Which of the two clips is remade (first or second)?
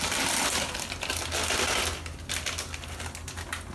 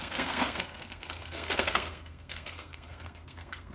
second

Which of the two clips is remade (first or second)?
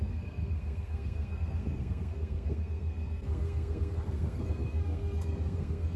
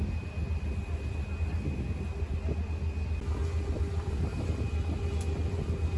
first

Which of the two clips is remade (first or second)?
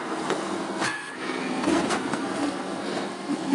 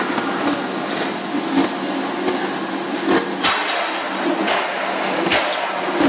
first